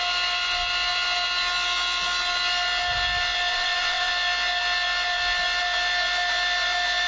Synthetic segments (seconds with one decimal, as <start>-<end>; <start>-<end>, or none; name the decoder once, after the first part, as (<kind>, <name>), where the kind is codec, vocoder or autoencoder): 3.5-4.1 (vocoder, WaveNeXt)